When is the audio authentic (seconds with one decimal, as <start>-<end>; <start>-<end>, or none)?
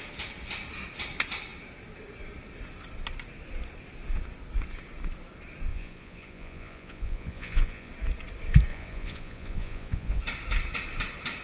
0.0-5.7; 7.9-8.7; 10.2-11.4